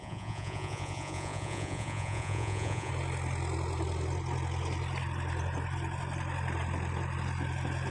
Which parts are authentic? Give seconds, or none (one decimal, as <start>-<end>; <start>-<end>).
2.9-7.9